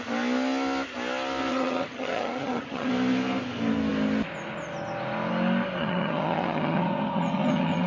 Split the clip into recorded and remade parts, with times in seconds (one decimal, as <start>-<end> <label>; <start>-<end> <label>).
0.0-1.5 recorded; 1.5-2.9 remade; 2.9-5.8 recorded; 5.8-7.9 remade